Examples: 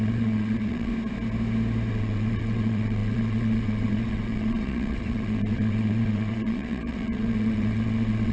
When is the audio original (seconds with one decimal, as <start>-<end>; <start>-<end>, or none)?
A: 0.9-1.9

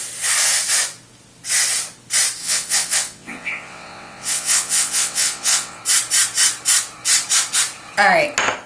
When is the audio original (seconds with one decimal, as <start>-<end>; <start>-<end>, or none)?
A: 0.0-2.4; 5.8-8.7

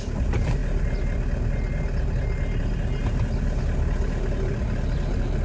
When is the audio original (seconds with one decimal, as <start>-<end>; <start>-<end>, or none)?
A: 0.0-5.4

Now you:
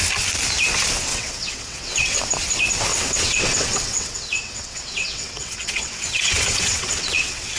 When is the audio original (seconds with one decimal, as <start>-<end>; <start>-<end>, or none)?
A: 0.0-1.1; 2.2-2.9

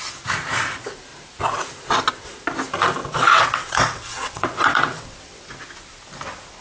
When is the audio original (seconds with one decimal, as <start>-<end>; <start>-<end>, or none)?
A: 0.0-3.0; 5.5-6.6